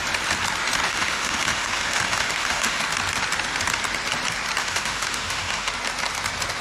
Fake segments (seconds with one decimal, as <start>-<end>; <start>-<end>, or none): 0.9-2.8; 4.6-5.7